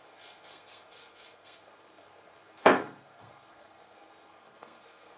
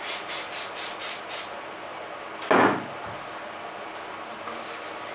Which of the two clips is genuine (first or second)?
second